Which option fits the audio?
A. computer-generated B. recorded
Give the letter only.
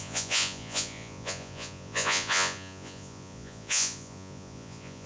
A